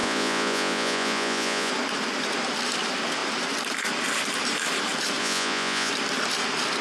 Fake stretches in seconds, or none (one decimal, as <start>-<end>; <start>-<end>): 0.0-1.7; 5.2-5.9